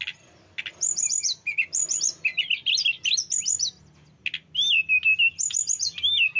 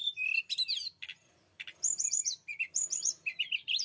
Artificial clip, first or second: second